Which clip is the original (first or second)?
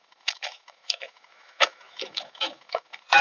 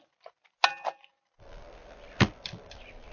second